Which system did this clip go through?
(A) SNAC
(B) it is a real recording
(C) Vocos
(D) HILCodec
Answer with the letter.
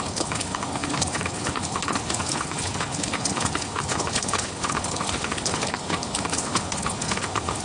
D